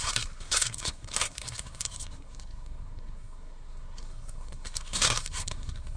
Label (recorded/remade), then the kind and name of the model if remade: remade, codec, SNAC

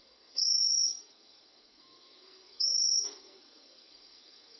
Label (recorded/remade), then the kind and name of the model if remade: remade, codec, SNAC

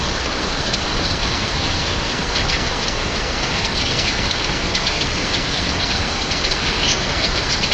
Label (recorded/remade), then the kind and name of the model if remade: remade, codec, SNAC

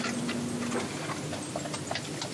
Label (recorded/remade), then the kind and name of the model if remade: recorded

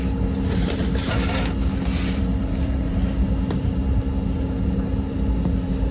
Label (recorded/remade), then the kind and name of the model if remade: recorded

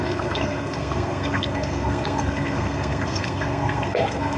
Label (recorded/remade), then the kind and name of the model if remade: remade, codec, SNAC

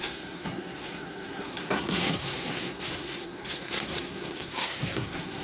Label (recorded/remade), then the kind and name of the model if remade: remade, codec, SNAC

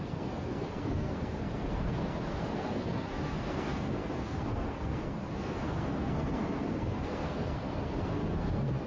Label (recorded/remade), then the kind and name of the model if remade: remade, codec, SNAC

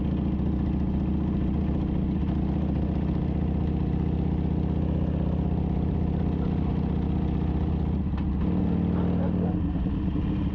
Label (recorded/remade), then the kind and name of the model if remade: recorded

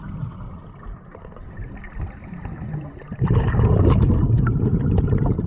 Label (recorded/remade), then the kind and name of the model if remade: recorded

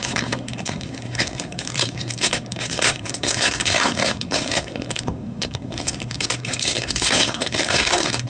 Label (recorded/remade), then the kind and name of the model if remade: remade, codec, SNAC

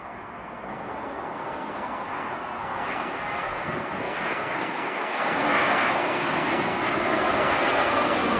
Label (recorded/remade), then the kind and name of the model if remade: remade, codec, SNAC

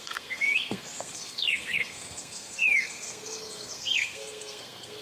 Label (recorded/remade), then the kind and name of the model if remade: remade, codec, SNAC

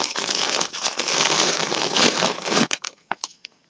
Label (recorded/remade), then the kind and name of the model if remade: remade, codec, SNAC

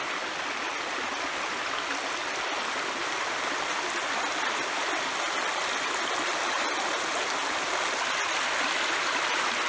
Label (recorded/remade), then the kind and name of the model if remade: recorded